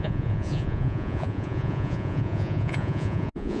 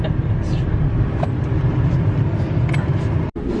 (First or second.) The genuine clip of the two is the second